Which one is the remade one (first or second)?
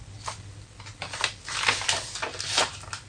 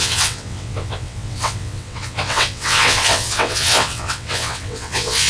second